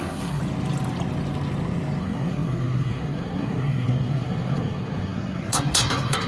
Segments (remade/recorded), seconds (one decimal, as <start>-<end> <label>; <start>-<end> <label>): 0.0-0.4 remade; 0.4-2.0 recorded; 2.0-6.3 remade